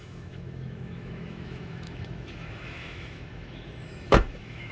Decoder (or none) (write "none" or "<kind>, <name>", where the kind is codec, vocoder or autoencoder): autoencoder, DAC-VAE